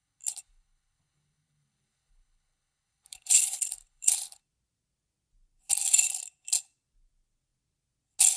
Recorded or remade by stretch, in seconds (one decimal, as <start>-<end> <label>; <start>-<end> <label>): 0.0-4.4 remade; 4.4-8.4 recorded